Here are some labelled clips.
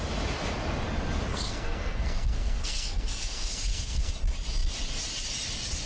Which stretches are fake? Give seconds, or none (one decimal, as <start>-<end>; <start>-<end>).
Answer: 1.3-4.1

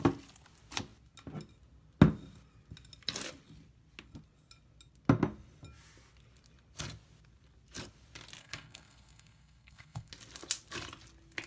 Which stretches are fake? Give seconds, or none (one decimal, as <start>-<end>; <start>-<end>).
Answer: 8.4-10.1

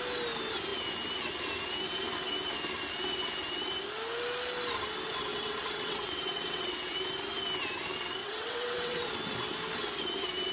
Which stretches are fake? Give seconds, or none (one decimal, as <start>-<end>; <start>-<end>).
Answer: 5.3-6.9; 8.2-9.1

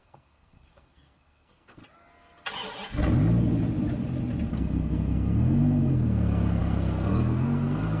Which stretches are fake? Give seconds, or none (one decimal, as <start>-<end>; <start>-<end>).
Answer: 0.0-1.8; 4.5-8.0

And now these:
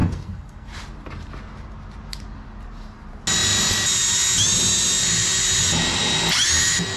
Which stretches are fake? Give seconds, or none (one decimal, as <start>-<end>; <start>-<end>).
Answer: 0.0-0.7

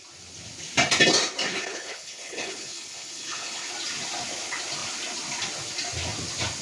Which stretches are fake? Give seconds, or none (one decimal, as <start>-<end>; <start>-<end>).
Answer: 1.5-3.7

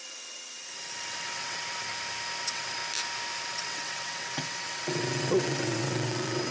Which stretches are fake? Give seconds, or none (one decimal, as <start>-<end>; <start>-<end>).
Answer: 0.0-1.9; 2.4-2.8; 3.4-6.5